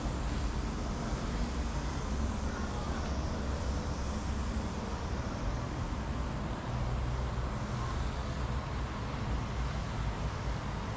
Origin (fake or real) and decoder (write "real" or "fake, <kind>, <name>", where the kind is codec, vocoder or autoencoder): real